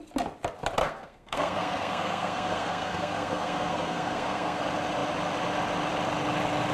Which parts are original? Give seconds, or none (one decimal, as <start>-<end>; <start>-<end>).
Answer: 0.0-0.8; 4.6-6.7